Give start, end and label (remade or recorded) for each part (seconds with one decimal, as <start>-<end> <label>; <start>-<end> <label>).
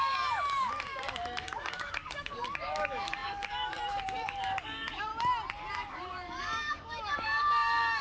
0.0-5.1 remade; 5.1-5.7 recorded; 5.7-8.0 remade